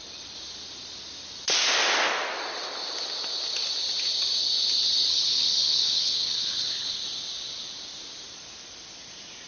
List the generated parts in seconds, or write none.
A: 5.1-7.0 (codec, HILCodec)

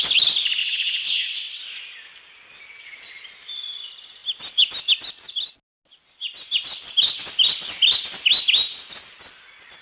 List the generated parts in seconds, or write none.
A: 0.6-1.6 (vocoder, WaveNeXt)

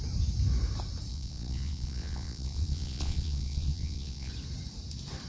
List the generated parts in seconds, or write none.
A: 1.1-4.3 (vocoder, Vocos)

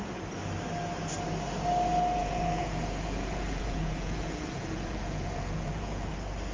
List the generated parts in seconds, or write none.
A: 2.2-6.1 (vocoder, Vocos)

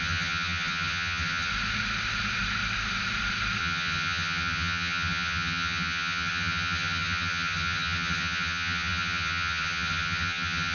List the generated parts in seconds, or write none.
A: 0.0-1.5 (vocoder, HiFi-GAN); 3.6-10.7